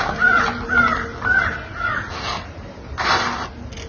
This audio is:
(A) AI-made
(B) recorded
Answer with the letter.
B